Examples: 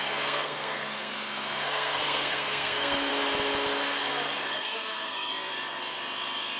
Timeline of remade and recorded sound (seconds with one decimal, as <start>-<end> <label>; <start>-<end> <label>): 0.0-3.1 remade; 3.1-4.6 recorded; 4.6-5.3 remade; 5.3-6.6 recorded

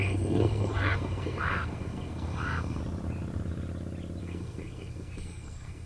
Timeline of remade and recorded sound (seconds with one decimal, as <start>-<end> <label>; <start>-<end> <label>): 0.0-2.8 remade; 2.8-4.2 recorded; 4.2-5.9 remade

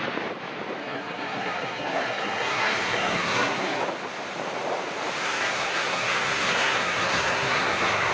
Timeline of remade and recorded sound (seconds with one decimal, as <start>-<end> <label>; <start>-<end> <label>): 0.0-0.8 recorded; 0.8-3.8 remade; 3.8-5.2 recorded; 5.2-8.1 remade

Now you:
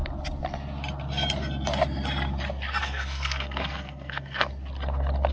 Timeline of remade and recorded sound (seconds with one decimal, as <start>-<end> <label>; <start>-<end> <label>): 0.0-2.8 recorded; 2.8-4.5 remade; 4.5-5.3 recorded